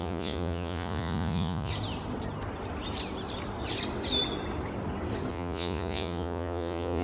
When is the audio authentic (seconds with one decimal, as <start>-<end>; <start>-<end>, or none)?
1.7-5.3